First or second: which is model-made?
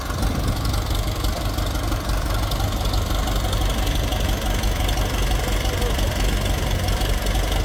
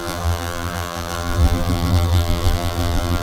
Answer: second